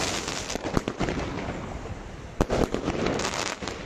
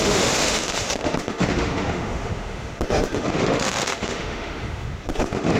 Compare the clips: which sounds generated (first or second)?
second